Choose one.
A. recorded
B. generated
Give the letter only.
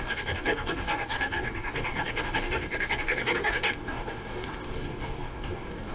B